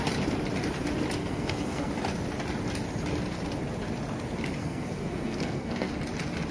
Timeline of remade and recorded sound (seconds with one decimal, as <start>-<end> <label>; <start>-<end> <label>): 0.0-1.2 recorded; 1.2-1.9 remade; 1.9-4.6 recorded; 4.6-5.9 remade; 5.9-6.5 recorded